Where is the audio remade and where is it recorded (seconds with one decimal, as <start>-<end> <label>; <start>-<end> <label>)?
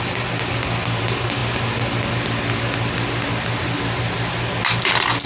0.0-5.3 recorded